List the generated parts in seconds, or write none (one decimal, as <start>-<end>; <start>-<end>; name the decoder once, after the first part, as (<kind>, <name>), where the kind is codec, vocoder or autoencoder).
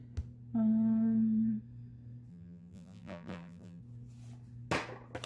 2.3-3.8 (vocoder, BigVGAN v2)